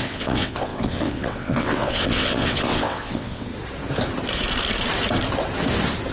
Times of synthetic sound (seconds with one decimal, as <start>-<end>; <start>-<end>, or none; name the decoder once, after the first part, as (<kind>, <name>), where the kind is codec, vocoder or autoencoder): 0.0-3.5 (vocoder, WaveNeXt)